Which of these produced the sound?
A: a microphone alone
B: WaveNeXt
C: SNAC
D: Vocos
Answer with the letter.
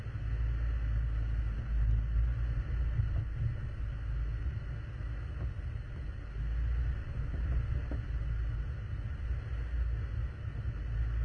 A